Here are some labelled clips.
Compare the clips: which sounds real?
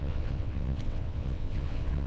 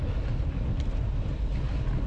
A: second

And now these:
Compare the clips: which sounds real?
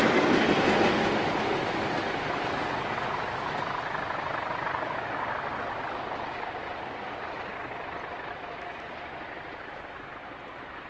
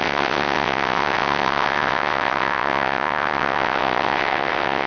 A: first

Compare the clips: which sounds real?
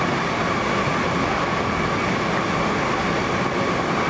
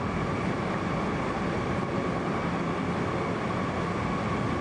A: first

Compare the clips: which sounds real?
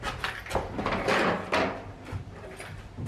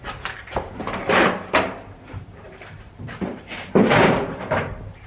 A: first